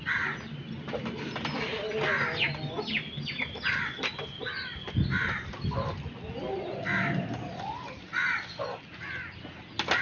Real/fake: real